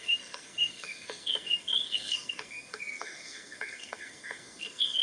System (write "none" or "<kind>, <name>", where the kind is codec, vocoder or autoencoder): codec, SNAC